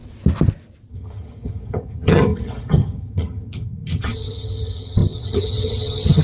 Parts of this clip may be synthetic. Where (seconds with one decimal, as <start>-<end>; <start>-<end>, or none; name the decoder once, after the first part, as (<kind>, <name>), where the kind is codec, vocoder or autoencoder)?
0.9-6.2 (vocoder, HiFi-GAN)

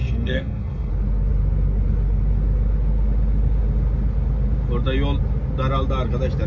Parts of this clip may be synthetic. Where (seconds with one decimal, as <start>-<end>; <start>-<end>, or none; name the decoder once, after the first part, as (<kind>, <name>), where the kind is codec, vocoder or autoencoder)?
0.0-0.9 (codec, SNAC)

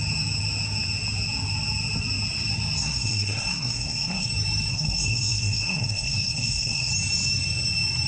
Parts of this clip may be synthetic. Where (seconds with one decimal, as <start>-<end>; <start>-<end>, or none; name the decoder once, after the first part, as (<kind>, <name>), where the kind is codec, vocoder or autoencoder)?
2.8-4.3 (codec, SNAC); 4.7-6.9

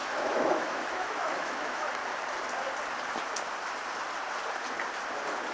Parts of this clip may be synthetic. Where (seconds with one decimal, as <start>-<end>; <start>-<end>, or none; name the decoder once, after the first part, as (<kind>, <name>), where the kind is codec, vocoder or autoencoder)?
0.0-2.0 (autoencoder, DAC-VAE)

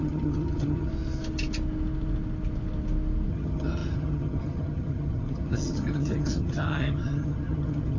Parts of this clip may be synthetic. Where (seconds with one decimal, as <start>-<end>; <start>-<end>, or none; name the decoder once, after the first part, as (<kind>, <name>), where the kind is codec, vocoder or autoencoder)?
0.0-0.9 (vocoder, HiFi-GAN); 3.3-8.0

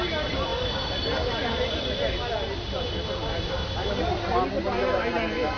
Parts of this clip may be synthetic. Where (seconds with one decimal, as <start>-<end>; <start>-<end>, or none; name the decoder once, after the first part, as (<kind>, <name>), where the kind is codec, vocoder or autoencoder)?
none

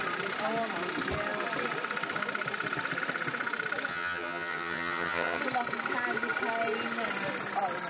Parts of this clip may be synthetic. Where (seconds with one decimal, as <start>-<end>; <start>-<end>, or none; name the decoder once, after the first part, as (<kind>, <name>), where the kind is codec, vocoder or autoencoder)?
3.9-5.4 (vocoder, HiFi-GAN)